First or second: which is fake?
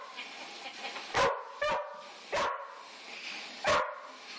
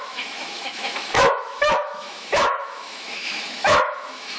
second